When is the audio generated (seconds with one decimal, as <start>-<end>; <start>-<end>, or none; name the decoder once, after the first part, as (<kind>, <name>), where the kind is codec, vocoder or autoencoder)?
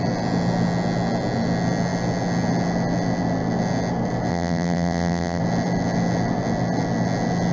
4.3-5.4 (vocoder, BigVGAN v2)